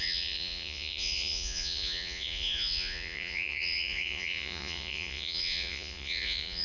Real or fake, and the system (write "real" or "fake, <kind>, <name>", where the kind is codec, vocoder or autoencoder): fake, vocoder, Vocos